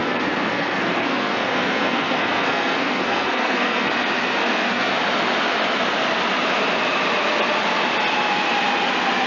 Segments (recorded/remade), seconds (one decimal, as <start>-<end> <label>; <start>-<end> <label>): 0.0-3.9 remade; 3.9-4.4 recorded; 4.4-5.0 remade; 5.0-9.3 recorded

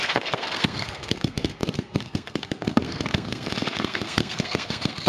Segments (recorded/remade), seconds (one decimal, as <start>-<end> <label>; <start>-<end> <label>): 0.0-5.1 remade